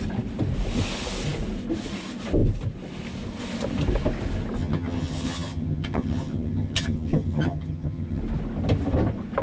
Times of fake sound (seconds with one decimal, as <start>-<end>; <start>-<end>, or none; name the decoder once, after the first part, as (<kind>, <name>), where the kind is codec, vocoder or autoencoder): 4.6-8.2 (vocoder, HiFi-GAN)